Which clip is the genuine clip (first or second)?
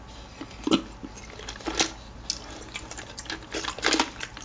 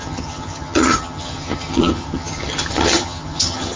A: first